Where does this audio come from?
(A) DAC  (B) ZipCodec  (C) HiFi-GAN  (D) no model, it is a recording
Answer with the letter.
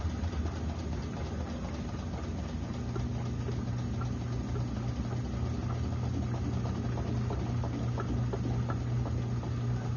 D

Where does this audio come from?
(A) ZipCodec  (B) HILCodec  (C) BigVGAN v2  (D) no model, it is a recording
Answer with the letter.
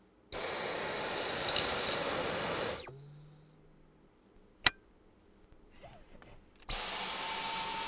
D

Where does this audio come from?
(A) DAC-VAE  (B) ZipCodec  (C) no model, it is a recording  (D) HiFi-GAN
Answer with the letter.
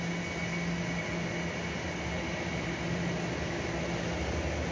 C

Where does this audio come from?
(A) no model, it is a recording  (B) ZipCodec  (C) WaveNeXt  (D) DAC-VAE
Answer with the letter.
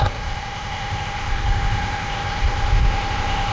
B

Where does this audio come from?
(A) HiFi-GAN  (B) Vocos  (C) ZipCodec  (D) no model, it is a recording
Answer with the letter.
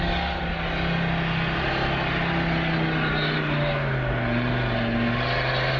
D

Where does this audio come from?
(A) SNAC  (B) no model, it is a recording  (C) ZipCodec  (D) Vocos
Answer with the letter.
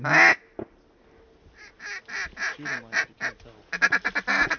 B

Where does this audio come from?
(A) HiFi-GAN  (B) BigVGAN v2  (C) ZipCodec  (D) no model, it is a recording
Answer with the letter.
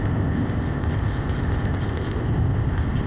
C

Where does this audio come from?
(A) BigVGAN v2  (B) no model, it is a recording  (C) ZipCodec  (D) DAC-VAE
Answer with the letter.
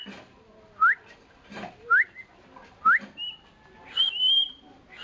B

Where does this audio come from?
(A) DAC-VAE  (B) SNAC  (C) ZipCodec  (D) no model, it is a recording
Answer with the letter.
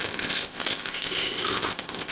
C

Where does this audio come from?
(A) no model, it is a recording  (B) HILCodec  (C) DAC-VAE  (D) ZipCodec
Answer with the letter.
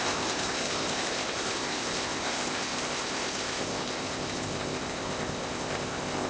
D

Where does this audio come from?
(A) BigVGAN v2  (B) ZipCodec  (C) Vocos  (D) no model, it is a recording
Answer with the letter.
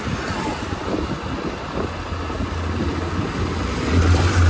D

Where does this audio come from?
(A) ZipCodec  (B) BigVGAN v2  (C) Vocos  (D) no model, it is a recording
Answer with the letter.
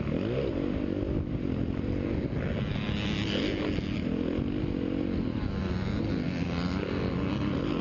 D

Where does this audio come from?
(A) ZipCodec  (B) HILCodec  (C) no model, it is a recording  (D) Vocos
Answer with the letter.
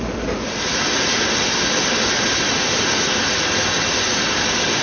C